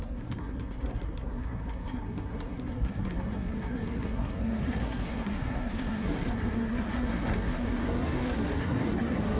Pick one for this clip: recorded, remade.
remade